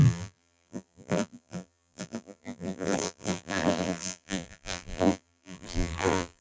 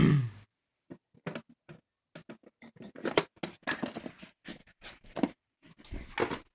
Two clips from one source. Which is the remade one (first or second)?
first